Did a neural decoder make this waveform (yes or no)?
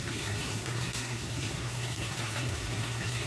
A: yes